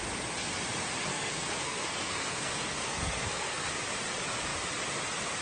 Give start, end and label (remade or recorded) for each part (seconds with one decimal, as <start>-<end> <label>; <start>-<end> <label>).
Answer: 0.0-1.1 recorded; 1.1-3.7 remade; 3.7-5.4 recorded